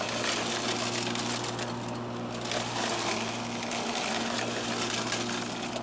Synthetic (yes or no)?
no